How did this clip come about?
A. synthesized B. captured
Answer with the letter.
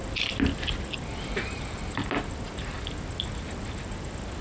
B